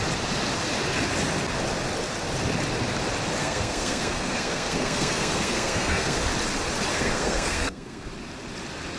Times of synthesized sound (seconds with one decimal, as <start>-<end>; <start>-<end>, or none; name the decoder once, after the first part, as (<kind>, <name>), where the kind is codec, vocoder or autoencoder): 3.4-6.2 (codec, SNAC); 6.9-8.1